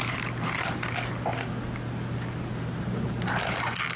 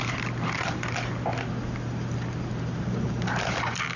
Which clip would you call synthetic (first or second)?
second